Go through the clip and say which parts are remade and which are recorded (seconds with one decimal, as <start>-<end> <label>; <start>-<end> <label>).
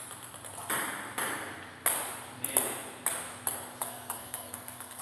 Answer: 0.0-3.8 recorded; 3.8-5.0 remade